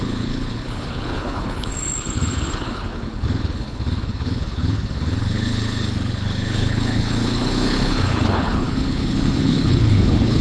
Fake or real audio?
fake